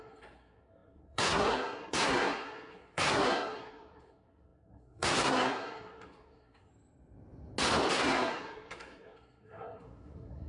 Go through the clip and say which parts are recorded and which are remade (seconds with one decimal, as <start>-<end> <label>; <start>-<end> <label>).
0.0-6.7 remade; 6.7-7.9 recorded; 7.9-10.5 remade